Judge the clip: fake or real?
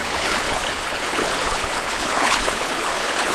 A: fake